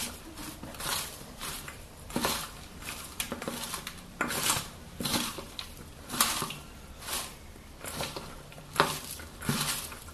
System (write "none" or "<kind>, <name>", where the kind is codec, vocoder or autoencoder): vocoder, BigVGAN v2